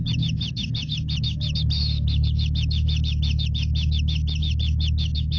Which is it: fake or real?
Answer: real